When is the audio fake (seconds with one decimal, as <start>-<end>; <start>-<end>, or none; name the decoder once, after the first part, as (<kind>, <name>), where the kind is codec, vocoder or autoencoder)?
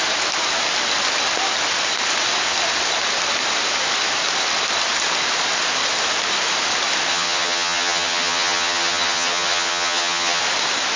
7.1-10.4 (vocoder, HiFi-GAN)